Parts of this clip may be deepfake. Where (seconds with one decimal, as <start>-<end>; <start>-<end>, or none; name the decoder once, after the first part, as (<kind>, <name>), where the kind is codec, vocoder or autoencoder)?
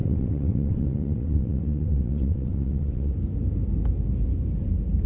0.0-3.1 (vocoder, WaveNeXt)